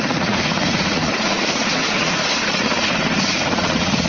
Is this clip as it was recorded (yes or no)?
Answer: no